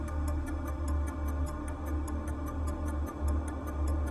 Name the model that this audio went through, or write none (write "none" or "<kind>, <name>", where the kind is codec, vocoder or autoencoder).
none